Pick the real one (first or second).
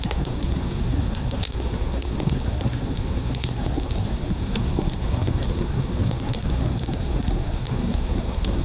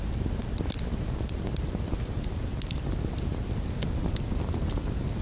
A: second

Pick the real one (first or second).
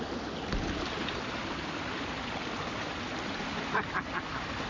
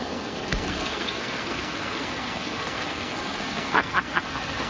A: first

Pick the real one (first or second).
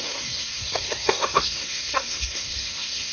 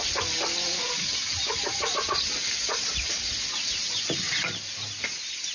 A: second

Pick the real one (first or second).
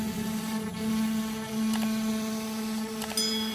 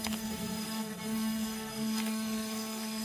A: first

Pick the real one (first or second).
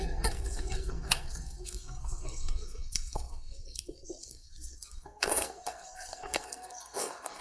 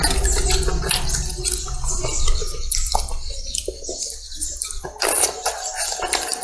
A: second